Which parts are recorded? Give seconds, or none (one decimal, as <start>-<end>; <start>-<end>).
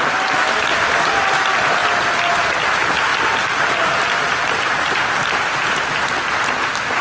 0.0-7.0